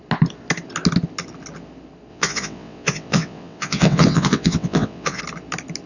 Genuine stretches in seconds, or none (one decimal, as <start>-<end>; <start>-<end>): 0.0-2.1; 5.2-5.9